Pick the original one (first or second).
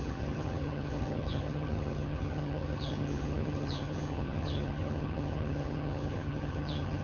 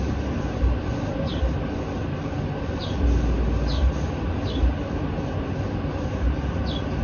second